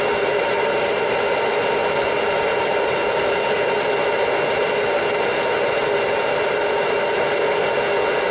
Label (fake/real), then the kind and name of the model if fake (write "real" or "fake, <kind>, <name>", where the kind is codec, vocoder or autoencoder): real